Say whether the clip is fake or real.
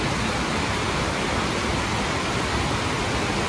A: real